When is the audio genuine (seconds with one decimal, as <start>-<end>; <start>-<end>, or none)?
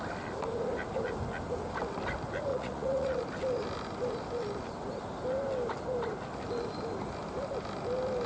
0.0-2.5; 3.2-8.3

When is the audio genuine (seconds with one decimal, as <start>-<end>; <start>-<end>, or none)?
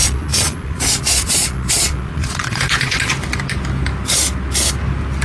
3.1-5.2